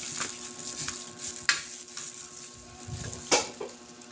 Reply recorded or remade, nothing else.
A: recorded